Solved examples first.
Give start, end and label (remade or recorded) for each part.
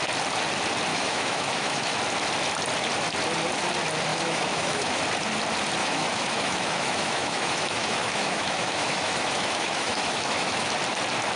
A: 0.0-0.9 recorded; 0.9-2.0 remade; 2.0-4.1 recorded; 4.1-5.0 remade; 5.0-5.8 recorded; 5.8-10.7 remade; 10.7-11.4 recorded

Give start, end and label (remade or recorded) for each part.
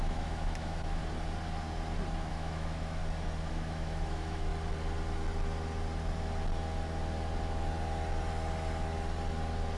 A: 0.0-1.0 remade; 1.0-2.3 recorded; 2.3-3.0 remade; 3.0-3.5 recorded; 3.5-4.5 remade; 4.5-9.8 recorded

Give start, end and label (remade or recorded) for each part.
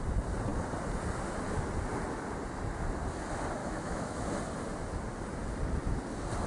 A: 0.0-3.6 recorded; 3.6-4.4 remade; 4.4-6.5 recorded